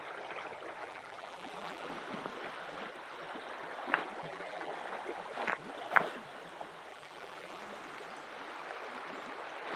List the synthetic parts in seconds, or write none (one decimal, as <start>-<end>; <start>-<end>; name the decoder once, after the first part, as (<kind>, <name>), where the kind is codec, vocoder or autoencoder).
0.8-1.9 (vocoder, BigVGAN v2); 4.2-4.7; 6.9-7.6